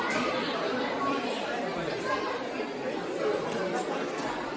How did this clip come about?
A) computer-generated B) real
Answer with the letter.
B